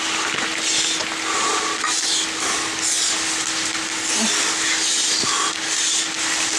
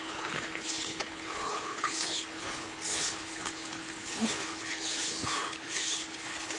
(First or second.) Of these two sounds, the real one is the first